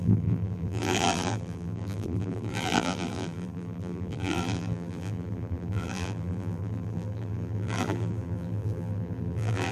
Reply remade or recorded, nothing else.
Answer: remade